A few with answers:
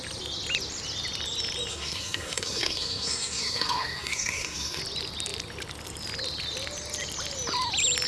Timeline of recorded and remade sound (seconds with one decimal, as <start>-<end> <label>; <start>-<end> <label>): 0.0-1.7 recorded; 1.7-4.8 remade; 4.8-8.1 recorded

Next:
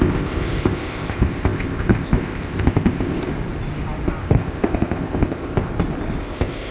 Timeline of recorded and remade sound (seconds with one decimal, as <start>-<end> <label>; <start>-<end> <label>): 0.0-3.3 remade; 3.3-4.2 recorded; 4.2-5.7 remade; 5.7-6.2 recorded; 6.2-6.7 remade

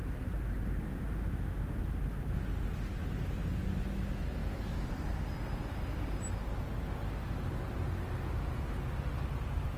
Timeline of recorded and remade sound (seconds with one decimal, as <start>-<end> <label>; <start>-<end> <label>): 0.0-4.4 recorded; 4.4-4.9 remade; 4.9-9.8 recorded

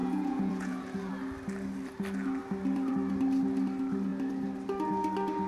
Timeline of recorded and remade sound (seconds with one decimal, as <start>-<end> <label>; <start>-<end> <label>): 0.0-1.1 remade; 1.1-5.5 recorded

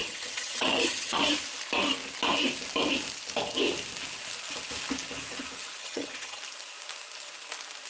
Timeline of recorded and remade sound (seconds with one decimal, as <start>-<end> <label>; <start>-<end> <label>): 0.0-1.2 remade; 1.2-5.8 recorded; 5.8-6.4 remade; 6.4-7.9 recorded

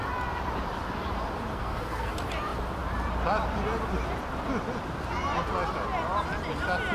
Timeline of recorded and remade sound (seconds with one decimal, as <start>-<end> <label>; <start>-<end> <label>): 0.0-1.5 recorded; 1.5-2.1 remade; 2.1-6.9 recorded

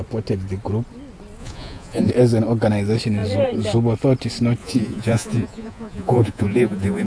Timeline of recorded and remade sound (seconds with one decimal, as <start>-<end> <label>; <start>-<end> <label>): 0.0-1.4 recorded; 1.4-2.1 remade; 2.1-4.6 recorded; 4.6-7.1 remade